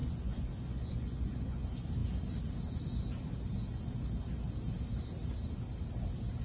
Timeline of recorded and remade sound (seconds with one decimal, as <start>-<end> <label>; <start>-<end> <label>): 0.0-1.6 remade; 1.6-6.4 recorded

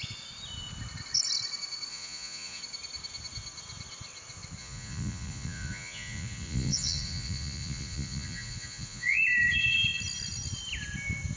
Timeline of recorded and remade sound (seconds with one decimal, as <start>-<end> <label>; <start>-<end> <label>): 0.0-1.9 recorded; 1.9-2.6 remade; 2.6-4.6 recorded; 4.6-9.2 remade; 9.2-11.4 recorded

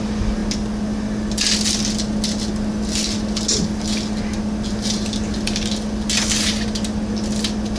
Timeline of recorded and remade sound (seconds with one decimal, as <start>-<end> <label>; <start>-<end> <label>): 0.0-7.8 recorded

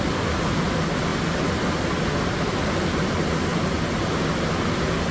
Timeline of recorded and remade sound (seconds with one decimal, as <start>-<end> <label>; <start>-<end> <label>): 0.0-5.1 recorded

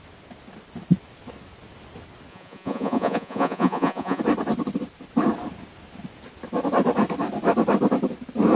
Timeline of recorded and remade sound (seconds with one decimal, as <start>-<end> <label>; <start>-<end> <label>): 0.0-2.3 recorded; 2.3-4.2 remade; 4.2-8.6 recorded